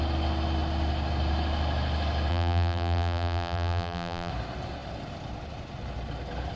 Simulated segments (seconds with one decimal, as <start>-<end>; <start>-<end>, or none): 2.3-4.3

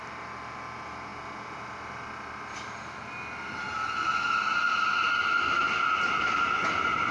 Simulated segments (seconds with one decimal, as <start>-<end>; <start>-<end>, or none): none

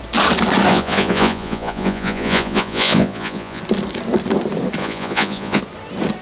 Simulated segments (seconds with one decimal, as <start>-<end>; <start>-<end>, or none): 0.7-3.6; 4.8-5.6

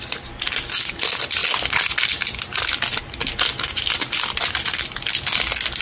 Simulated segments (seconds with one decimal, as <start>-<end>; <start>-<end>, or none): none

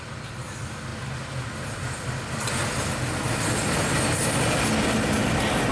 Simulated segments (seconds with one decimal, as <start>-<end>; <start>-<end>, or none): none

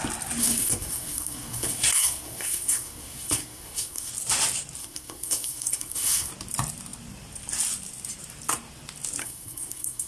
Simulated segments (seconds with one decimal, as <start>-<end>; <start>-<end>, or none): 0.4-4.1; 4.8-6.3; 9.2-10.1